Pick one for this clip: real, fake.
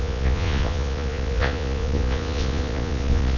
fake